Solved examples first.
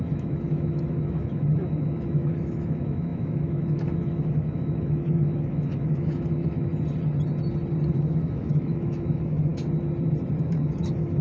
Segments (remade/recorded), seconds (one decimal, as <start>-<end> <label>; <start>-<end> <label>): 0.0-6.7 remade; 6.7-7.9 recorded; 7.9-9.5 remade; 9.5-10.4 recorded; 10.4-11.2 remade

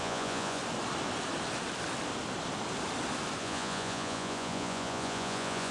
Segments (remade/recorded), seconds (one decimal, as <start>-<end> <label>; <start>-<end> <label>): 0.0-0.6 remade; 0.6-3.4 recorded; 3.4-5.7 remade

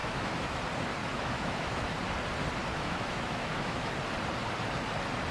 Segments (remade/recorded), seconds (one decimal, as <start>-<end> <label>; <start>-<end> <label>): 0.0-0.6 remade; 0.6-1.0 recorded; 1.0-1.9 remade; 1.9-2.7 recorded; 2.7-3.9 remade; 3.9-5.3 recorded

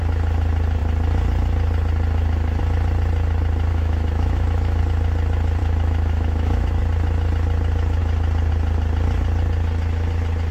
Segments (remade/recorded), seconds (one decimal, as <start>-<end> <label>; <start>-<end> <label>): 0.0-3.7 recorded; 3.7-4.8 remade; 4.8-5.6 recorded; 5.6-6.8 remade; 6.8-10.5 recorded

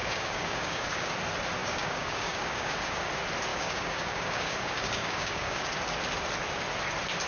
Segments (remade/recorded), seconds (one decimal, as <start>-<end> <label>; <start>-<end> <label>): 0.0-1.1 remade; 1.1-1.6 recorded; 1.6-3.1 remade; 3.1-3.5 recorded; 3.5-5.7 remade; 5.7-7.3 recorded

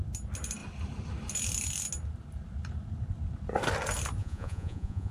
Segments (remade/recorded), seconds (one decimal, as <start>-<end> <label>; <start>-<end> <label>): 0.0-4.2 recorded; 4.2-5.1 remade